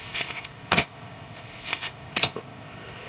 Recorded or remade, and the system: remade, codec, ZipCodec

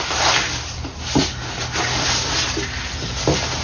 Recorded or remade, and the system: recorded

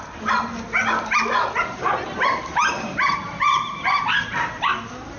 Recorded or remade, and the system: recorded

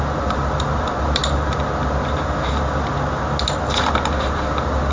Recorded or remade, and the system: recorded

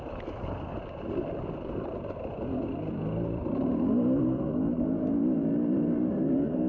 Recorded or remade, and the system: recorded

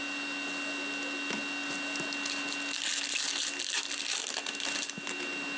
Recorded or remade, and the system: recorded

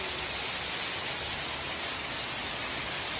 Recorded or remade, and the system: recorded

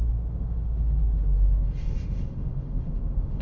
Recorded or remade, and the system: remade, autoencoder, DAC-VAE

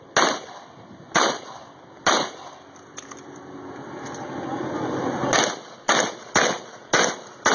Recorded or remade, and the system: recorded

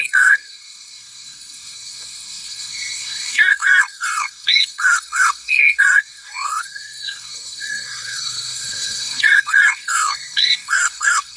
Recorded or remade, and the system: remade, codec, SNAC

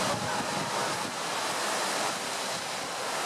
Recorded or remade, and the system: recorded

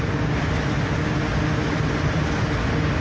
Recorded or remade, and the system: recorded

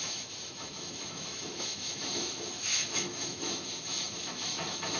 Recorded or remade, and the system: remade, autoencoder, DAC-VAE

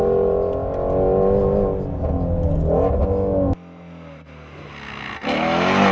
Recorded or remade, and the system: recorded